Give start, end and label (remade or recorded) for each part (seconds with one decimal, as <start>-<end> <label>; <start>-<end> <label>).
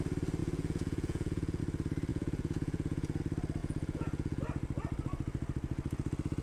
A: 0.0-0.4 recorded; 0.4-1.6 remade; 1.6-2.1 recorded; 2.1-3.2 remade; 3.2-3.6 recorded; 3.6-4.4 remade; 4.4-6.4 recorded